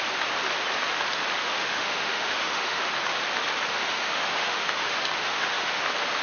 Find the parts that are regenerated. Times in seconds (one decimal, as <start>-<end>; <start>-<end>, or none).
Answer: 1.4-2.8; 3.7-5.8